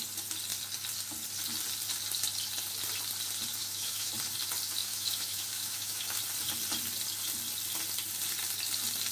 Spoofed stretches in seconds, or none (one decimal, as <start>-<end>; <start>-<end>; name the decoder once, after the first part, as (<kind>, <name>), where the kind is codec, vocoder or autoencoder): 3.6-4.1 (autoencoder, DAC-VAE); 4.8-6.2